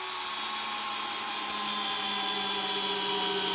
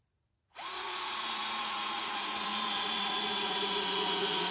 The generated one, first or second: second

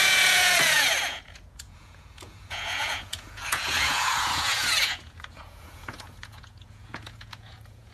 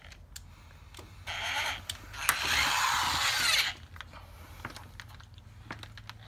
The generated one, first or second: first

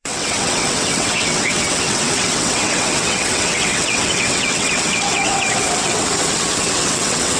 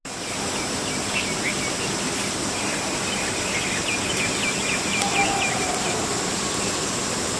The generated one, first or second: first